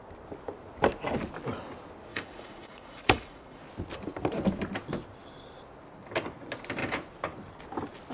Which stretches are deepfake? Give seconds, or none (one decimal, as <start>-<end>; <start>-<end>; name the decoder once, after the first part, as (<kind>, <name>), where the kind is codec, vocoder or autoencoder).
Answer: 2.1-3.6 (vocoder, Vocos)